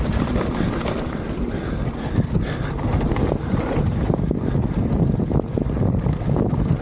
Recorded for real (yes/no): yes